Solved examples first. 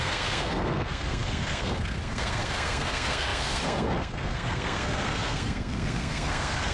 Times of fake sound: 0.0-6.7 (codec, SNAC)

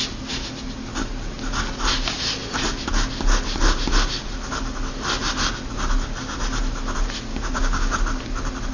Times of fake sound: 7.3-8.0 (codec, DAC)